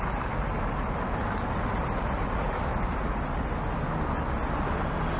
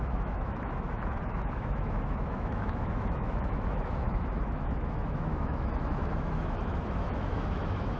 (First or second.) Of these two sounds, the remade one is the second